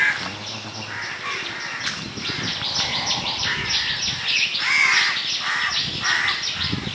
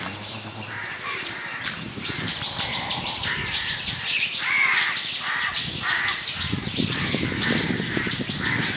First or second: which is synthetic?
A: second